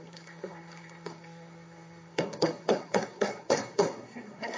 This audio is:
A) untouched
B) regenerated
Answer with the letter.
B